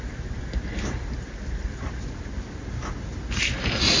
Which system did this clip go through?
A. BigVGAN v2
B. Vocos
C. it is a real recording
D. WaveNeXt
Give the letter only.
C